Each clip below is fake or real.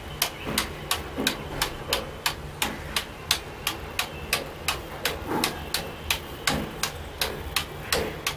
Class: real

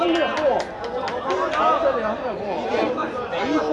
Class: real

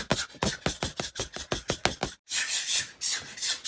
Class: real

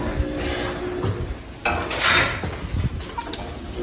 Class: real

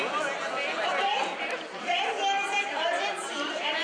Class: real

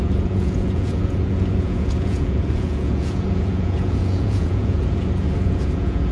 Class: fake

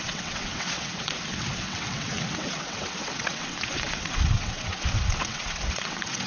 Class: fake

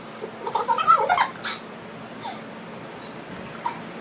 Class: real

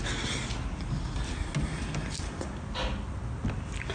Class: real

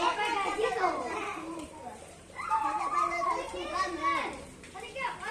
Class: fake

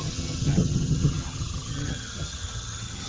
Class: fake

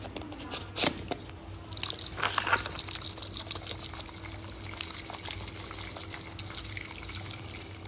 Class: real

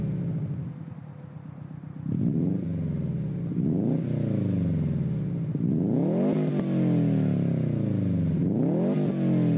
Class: real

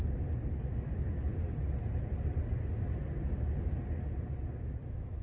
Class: real